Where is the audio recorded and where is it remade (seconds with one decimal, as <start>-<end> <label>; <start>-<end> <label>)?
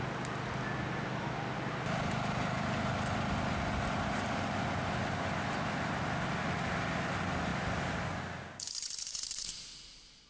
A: 0.0-10.3 recorded